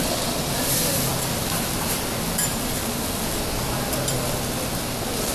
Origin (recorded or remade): recorded